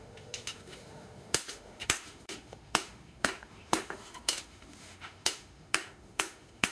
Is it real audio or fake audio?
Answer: fake